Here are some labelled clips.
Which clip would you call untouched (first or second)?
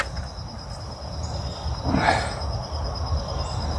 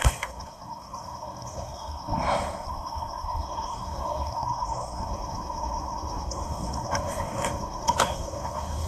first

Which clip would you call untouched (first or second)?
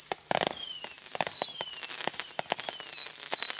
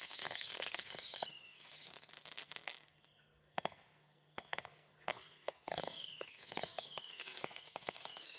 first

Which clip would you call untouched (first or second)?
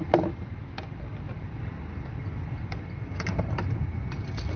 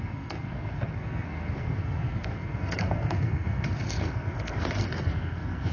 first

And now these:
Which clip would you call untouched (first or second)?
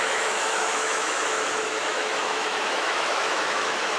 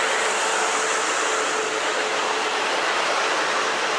second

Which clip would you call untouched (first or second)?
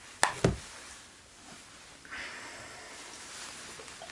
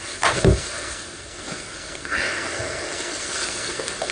first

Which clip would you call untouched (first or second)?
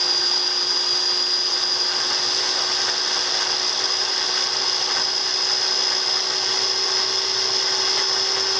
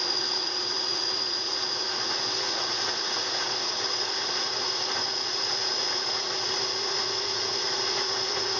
first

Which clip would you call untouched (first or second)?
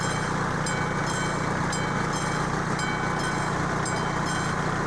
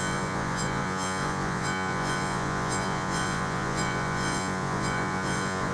first